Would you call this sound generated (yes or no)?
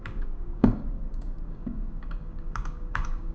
yes